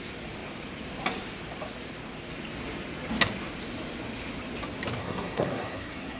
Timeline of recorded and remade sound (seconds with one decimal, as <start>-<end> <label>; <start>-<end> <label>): 0.0-5.0 recorded; 5.0-6.2 remade